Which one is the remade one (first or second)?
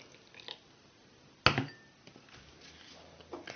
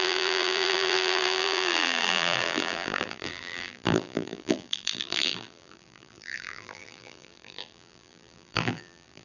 second